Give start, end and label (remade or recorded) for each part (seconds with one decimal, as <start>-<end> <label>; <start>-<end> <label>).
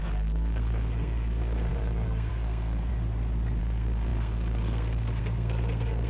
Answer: 0.0-2.9 remade; 2.9-3.6 recorded; 3.6-6.1 remade